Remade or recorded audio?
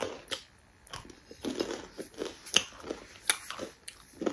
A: recorded